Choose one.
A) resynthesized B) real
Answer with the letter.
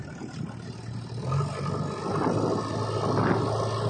B